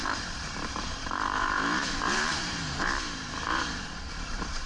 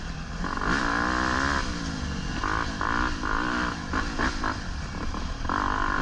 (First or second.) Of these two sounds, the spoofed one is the first